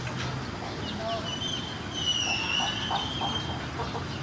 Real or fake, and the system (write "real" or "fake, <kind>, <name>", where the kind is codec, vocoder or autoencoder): real